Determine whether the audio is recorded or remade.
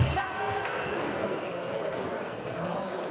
remade